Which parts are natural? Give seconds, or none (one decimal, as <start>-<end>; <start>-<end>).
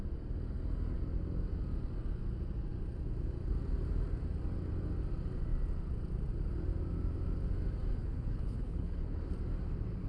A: 0.0-8.0; 9.3-10.1